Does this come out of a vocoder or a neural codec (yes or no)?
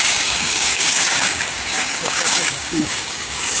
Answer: yes